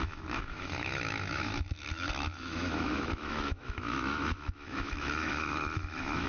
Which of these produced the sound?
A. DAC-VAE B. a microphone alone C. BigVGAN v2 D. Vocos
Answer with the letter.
A